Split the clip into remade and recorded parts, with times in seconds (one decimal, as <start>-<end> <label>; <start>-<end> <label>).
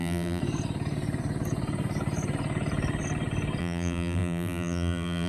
0.0-0.4 remade; 0.4-3.6 recorded; 3.6-5.3 remade